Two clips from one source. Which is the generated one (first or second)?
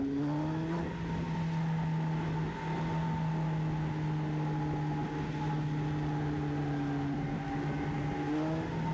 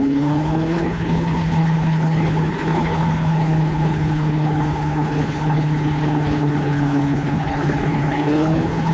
second